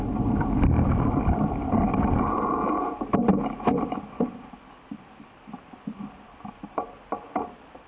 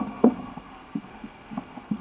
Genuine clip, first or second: first